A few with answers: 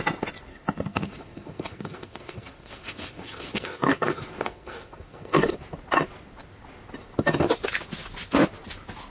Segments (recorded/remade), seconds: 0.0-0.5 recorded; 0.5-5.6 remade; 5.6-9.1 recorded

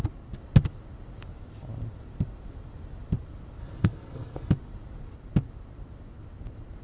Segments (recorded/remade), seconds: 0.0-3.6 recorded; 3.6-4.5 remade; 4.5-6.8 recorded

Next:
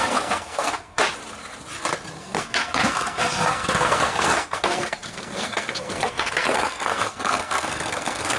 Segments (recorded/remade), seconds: 0.0-1.0 remade; 1.0-2.2 recorded; 2.2-8.4 remade